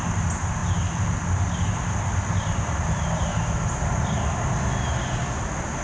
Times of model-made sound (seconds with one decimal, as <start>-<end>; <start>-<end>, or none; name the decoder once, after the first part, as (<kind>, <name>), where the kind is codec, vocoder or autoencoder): none